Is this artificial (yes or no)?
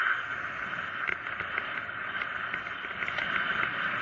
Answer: no